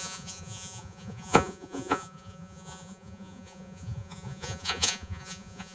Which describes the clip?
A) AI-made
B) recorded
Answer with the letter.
A